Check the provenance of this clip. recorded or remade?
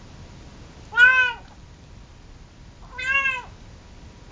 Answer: recorded